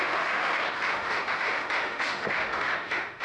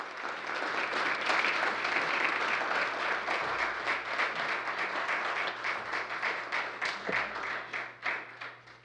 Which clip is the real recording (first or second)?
second